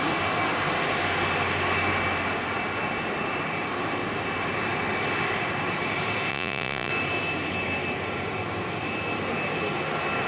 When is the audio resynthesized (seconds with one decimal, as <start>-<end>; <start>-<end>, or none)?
6.3-6.9